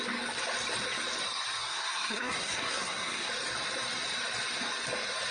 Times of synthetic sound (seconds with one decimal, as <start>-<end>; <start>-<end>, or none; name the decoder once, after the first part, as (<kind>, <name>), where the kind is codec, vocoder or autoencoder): 1.6-3.3 (codec, SNAC)